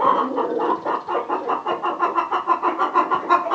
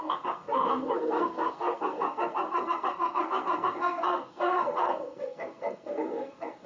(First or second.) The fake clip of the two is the second